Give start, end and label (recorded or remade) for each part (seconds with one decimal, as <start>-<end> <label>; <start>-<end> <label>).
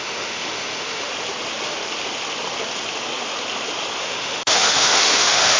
0.0-1.1 remade; 1.1-4.0 recorded; 4.0-5.6 remade